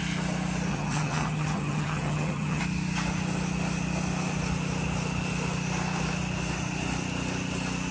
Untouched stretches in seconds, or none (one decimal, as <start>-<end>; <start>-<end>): 0.0-0.7; 2.6-7.9